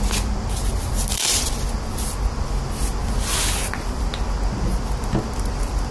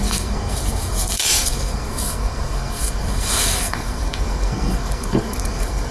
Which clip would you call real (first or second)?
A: first